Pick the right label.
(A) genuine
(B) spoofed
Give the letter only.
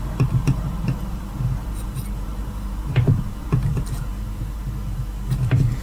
B